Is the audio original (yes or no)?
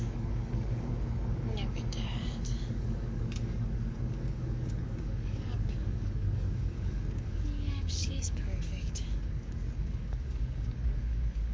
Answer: no